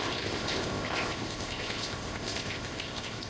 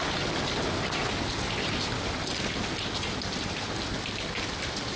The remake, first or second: first